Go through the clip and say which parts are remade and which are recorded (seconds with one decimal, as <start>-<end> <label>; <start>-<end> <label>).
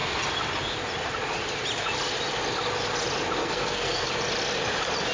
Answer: 0.0-3.4 recorded; 3.4-4.1 remade; 4.1-5.1 recorded